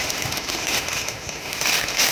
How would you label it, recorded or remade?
remade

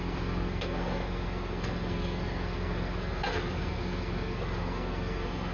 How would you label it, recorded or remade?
remade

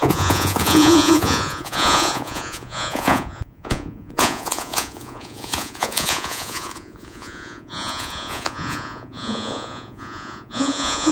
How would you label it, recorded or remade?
remade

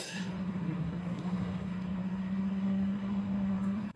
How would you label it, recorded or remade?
remade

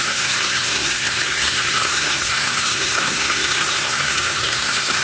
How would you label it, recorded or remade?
remade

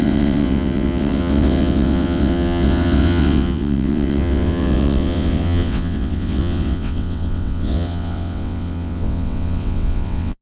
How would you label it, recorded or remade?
remade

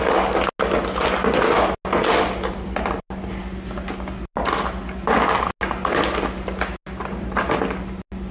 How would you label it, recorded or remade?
recorded